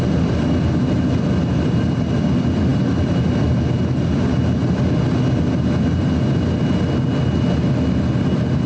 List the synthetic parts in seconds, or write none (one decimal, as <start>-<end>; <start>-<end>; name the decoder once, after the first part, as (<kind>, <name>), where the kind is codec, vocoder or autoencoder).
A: none